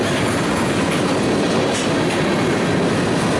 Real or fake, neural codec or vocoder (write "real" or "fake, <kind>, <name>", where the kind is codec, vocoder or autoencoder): real